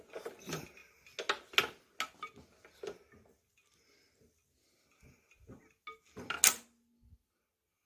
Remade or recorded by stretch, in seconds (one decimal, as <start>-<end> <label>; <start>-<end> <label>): 0.0-7.9 recorded